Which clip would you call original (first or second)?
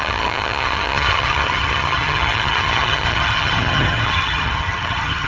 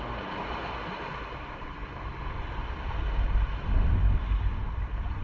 second